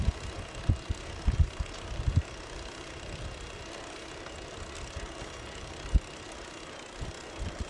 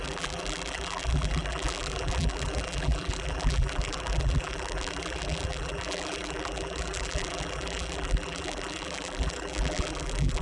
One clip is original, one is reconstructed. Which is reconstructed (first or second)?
second